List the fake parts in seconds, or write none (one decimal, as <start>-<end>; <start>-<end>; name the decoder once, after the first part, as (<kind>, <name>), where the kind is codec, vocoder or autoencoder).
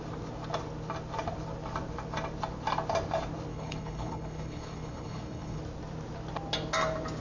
3.5-5.6 (codec, HILCodec)